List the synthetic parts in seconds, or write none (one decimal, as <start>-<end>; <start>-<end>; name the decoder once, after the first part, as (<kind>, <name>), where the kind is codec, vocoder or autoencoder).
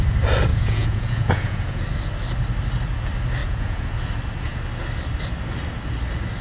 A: 0.5-1.8 (vocoder, Vocos); 3.4-3.9